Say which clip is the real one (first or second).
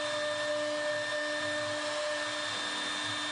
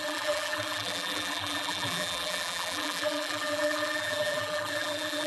first